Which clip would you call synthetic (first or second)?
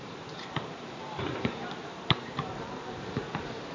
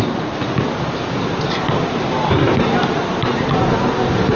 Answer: first